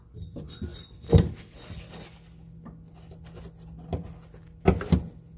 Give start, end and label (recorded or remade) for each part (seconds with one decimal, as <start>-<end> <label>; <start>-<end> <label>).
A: 0.0-5.4 recorded